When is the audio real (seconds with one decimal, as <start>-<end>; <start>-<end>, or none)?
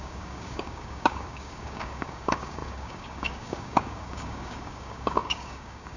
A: none